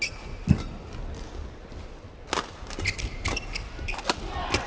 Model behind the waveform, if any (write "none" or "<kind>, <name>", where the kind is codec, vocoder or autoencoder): none